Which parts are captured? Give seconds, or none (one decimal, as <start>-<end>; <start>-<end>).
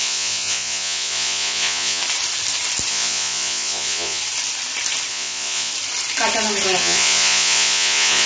2.0-2.9; 4.2-5.1; 5.7-6.8